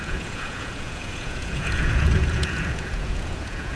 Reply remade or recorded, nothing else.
remade